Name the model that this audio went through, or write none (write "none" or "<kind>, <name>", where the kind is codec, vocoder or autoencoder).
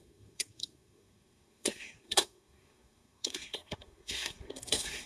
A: codec, SNAC